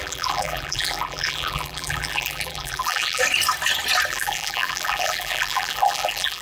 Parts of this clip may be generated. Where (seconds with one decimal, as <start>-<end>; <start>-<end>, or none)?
0.0-3.2; 4.1-6.4